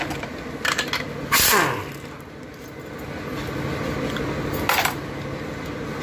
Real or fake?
real